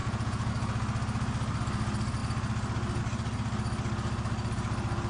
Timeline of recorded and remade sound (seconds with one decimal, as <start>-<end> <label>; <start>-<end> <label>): 0.0-0.5 remade; 0.5-5.1 recorded